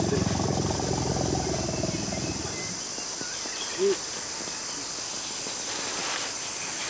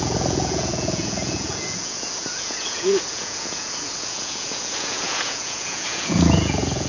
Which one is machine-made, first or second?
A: second